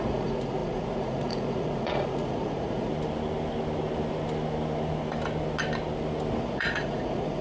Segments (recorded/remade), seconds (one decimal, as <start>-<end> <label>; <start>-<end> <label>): 0.0-2.9 remade; 2.9-6.4 recorded; 6.4-7.4 remade